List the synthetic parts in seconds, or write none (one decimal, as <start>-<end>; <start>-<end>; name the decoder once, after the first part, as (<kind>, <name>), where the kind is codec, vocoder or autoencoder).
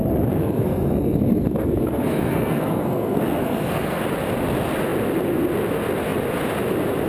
0.4-4.0 (codec, SNAC)